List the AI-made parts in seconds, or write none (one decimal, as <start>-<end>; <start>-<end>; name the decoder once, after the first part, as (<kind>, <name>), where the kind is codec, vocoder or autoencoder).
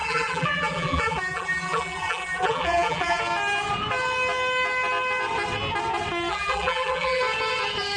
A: 0.0-3.2 (vocoder, BigVGAN v2); 6.3-7.2